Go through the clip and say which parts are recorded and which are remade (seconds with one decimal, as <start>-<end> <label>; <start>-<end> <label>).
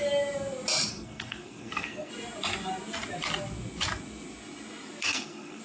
0.0-0.9 recorded; 0.9-2.1 remade; 2.1-5.0 recorded; 5.0-5.6 remade